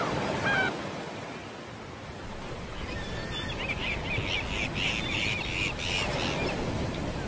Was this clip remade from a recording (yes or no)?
no